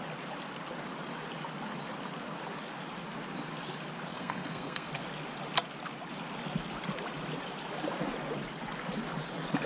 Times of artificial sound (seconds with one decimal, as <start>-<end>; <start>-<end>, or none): 4.1-4.9

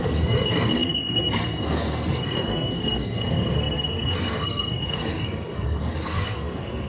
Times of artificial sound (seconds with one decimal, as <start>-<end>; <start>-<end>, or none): 0.0-6.9

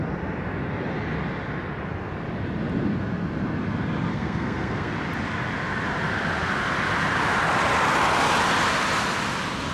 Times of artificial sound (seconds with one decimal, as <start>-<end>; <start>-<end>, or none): 4.1-4.9